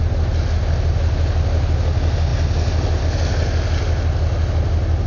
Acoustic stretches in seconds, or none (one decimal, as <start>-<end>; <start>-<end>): 0.0-5.1